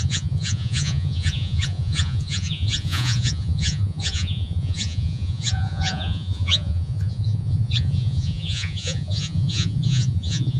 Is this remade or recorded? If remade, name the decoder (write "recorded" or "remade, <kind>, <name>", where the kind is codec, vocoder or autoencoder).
remade, vocoder, Vocos